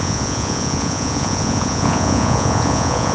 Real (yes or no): no